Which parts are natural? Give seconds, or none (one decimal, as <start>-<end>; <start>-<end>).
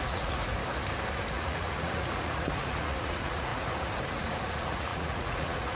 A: 0.5-1.3; 3.5-4.1